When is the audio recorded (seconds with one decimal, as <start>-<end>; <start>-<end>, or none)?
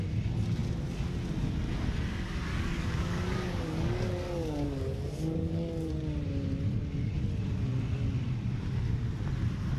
0.0-2.5; 5.9-9.8